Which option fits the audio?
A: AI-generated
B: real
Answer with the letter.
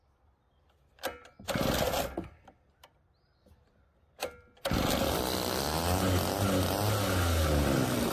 B